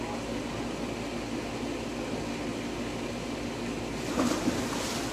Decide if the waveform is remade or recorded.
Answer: recorded